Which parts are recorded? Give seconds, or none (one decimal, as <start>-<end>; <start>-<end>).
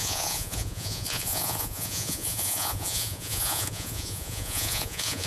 none